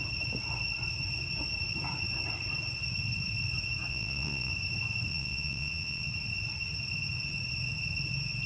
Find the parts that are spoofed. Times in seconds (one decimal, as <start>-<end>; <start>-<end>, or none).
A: 3.9-4.5; 5.1-6.1